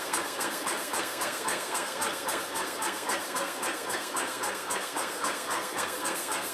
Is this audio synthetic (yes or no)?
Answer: yes